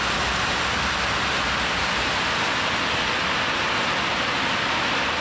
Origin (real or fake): real